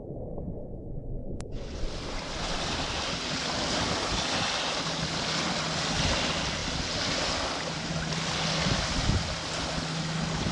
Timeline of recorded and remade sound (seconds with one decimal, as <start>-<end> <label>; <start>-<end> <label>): 0.0-1.2 recorded; 1.2-1.8 remade; 1.8-10.5 recorded